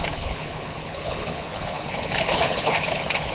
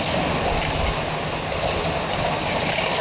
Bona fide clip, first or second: second